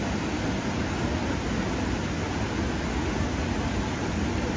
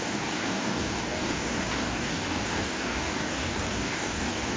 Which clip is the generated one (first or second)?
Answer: second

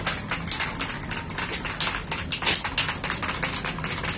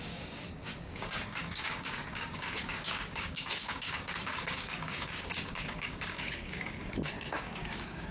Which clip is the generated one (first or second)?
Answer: second